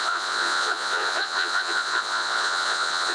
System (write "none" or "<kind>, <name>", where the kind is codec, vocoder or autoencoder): vocoder, Vocos